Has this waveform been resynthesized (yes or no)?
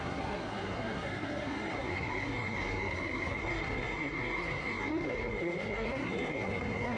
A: yes